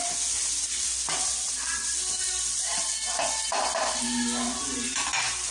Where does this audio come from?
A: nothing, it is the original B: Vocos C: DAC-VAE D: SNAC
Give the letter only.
A